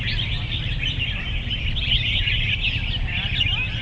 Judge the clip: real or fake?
real